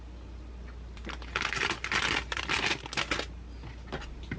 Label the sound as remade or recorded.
recorded